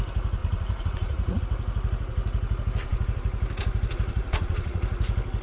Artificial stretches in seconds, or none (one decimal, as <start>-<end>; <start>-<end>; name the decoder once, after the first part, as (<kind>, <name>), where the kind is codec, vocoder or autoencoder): 0.4-1.4 (vocoder, Vocos); 4.1-4.8